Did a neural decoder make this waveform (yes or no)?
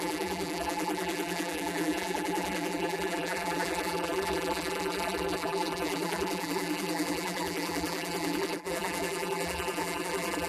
yes